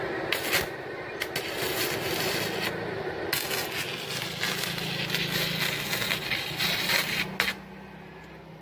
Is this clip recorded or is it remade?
recorded